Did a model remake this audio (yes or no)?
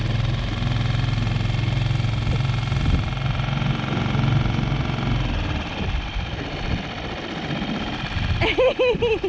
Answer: no